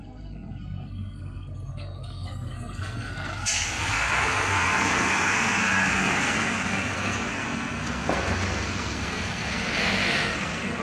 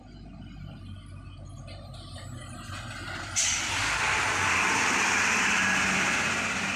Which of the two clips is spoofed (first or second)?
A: first